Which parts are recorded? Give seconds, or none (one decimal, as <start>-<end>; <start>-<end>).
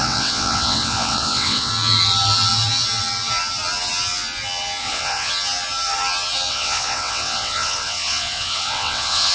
1.7-4.8; 5.3-6.5